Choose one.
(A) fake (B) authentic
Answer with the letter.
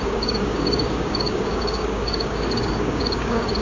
A